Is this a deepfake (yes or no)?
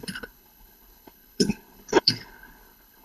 yes